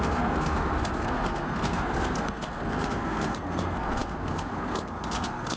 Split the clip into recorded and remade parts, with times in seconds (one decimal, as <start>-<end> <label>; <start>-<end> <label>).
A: 0.0-5.6 remade